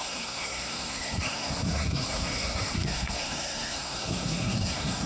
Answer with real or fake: fake